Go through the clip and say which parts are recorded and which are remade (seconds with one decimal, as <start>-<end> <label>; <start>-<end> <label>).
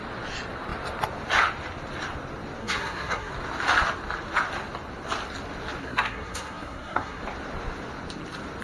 0.0-2.6 recorded; 2.6-3.3 remade; 3.3-5.8 recorded; 5.8-7.2 remade; 7.2-8.6 recorded